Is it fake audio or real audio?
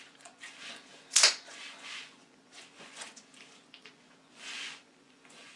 fake